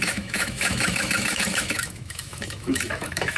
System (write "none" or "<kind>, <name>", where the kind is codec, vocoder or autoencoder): autoencoder, DAC-VAE